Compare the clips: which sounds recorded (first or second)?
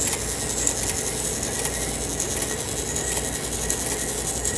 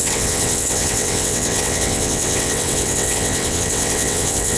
first